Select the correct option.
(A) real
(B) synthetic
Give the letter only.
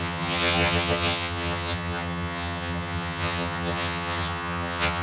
B